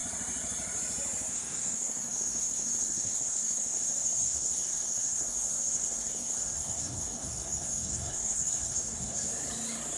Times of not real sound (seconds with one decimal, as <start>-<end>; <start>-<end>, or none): 1.3-9.3